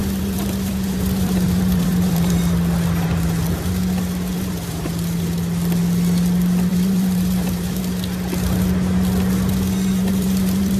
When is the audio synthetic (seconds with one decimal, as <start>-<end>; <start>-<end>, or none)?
0.0-2.4; 4.3-4.9; 6.7-7.8; 9.9-10.8